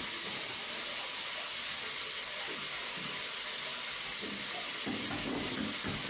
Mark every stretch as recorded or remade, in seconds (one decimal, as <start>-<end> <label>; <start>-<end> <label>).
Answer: 0.0-6.1 recorded